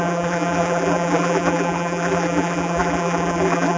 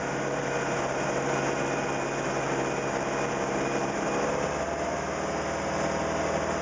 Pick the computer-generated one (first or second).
first